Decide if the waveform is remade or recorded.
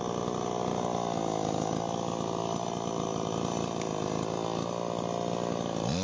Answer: recorded